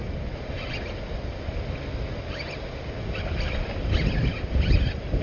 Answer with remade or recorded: recorded